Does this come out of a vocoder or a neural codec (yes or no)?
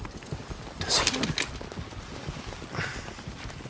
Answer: no